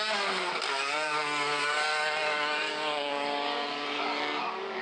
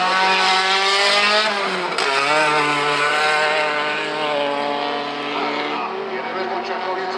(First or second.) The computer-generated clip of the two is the first